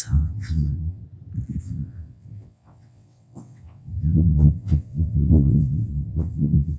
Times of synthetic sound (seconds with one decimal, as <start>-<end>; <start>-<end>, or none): 0.0-1.0; 1.6-6.8